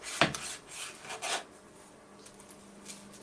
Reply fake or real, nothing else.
real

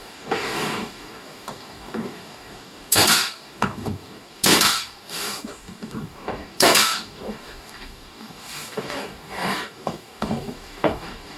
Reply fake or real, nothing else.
fake